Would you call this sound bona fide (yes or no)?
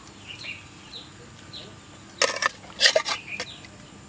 yes